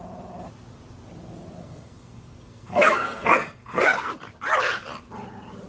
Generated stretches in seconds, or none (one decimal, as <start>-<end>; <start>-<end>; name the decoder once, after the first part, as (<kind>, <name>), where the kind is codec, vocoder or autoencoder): 1.6-4.1 (codec, SNAC)